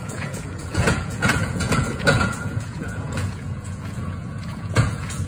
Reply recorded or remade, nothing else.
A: remade